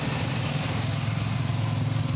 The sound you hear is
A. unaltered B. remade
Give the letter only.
A